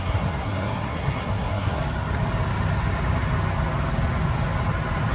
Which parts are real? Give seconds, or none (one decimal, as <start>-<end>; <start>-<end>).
1.8-5.1